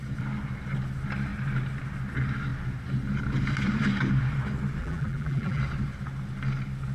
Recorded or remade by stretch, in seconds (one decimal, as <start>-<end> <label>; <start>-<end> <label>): 0.0-4.8 recorded; 4.8-5.6 remade; 5.6-6.9 recorded